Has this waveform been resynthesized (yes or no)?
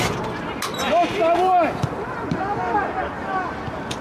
no